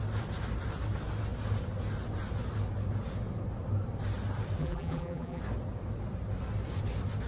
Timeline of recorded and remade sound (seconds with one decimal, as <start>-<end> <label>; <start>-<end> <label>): 0.0-4.6 recorded; 4.6-5.4 remade; 5.4-7.3 recorded